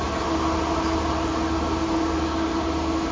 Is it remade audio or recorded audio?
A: recorded